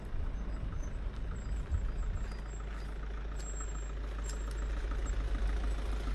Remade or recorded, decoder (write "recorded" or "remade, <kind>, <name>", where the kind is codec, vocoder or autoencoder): recorded